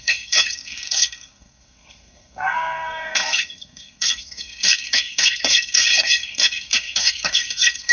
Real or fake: fake